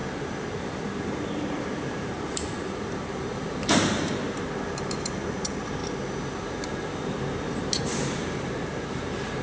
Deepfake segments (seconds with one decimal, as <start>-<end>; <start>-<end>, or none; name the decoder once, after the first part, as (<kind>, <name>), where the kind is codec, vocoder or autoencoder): 0.0-5.8 (vocoder, BigVGAN v2); 8.2-9.4